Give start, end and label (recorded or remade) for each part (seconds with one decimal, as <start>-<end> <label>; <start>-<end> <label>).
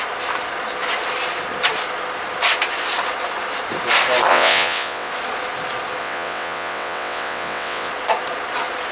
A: 0.0-4.3 recorded; 4.3-5.1 remade; 5.1-6.0 recorded; 6.0-7.9 remade; 7.9-8.9 recorded